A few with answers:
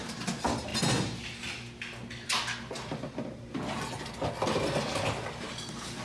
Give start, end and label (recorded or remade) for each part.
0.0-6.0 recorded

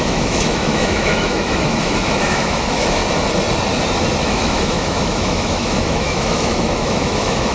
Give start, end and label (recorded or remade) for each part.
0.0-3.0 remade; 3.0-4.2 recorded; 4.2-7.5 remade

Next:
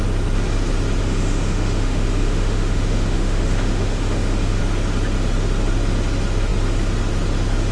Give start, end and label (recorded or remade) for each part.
0.0-1.0 recorded; 1.0-4.6 remade; 4.6-7.7 recorded

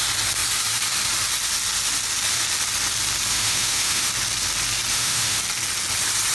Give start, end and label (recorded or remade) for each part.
0.0-3.3 recorded; 3.3-4.1 remade; 4.1-4.9 recorded; 4.9-5.4 remade; 5.4-6.3 recorded

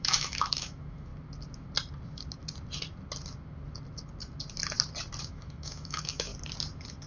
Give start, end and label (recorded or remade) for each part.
0.0-1.1 remade; 1.1-5.2 recorded; 5.2-6.3 remade; 6.3-7.1 recorded

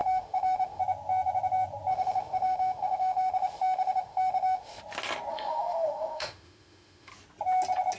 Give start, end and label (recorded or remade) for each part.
0.0-0.8 remade; 0.8-1.9 recorded; 1.9-4.8 remade; 4.8-5.3 recorded; 5.3-7.1 remade; 7.1-8.0 recorded